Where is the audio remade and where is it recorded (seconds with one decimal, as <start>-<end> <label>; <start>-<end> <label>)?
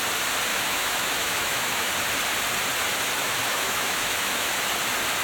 0.0-0.5 recorded; 0.5-1.9 remade; 1.9-3.2 recorded; 3.2-4.5 remade; 4.5-5.2 recorded